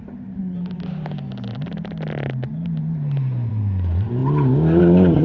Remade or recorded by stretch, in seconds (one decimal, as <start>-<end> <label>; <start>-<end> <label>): 0.0-5.2 recorded